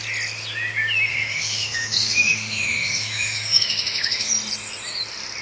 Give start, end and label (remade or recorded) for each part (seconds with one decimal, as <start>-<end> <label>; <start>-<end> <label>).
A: 0.0-1.1 recorded; 1.1-4.3 remade; 4.3-5.4 recorded

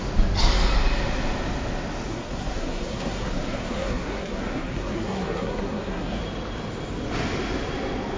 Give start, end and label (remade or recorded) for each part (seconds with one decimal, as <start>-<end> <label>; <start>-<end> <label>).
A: 0.0-2.1 recorded; 2.1-6.2 remade; 6.2-8.2 recorded

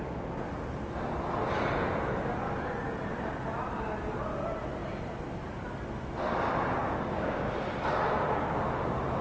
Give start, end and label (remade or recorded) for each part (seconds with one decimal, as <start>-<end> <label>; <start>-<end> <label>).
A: 0.0-6.8 recorded; 6.8-7.5 remade; 7.5-9.2 recorded

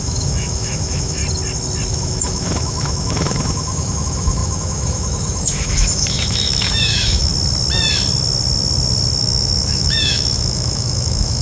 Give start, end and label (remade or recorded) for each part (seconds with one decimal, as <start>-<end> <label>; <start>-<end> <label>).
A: 0.0-1.2 remade; 1.2-1.9 recorded; 1.9-7.3 remade; 7.3-9.2 recorded; 9.2-11.4 remade

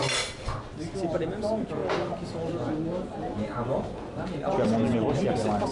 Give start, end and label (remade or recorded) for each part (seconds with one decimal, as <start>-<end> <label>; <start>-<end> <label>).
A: 0.0-5.7 recorded